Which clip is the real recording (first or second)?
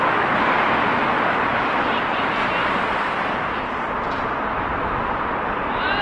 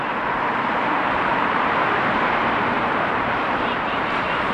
first